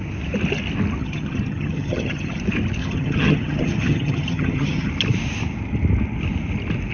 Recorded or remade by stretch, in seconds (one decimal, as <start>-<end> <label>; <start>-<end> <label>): 0.0-1.0 recorded; 1.0-2.4 remade; 2.4-2.8 recorded; 2.8-4.9 remade; 4.9-6.9 recorded